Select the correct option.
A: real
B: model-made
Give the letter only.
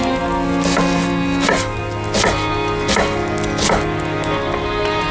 A